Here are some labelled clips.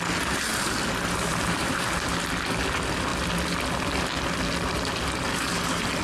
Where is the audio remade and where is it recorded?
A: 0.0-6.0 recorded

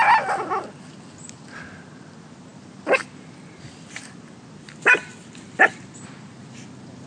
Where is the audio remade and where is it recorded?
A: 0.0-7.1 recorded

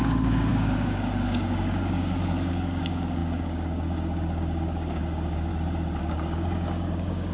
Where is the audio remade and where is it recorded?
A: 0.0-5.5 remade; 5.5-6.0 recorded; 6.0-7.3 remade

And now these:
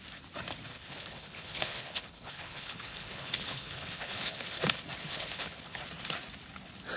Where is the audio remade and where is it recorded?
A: 0.0-0.7 recorded; 0.7-4.6 remade; 4.6-5.0 recorded; 5.0-5.8 remade; 5.8-7.0 recorded

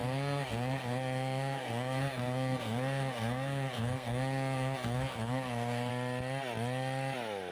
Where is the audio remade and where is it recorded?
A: 0.0-5.9 remade; 5.9-7.5 recorded

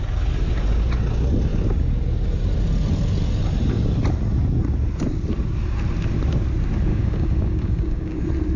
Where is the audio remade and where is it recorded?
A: 0.0-6.9 recorded; 6.9-8.2 remade; 8.2-8.6 recorded

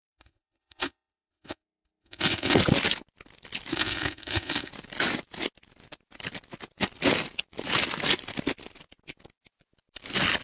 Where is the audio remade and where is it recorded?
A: 0.0-2.6 remade; 2.6-3.7 recorded; 3.7-4.7 remade; 4.7-10.4 recorded

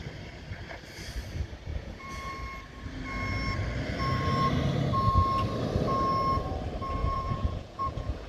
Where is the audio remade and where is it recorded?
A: 0.0-1.7 recorded; 1.7-2.3 remade; 2.3-7.0 recorded; 7.0-8.3 remade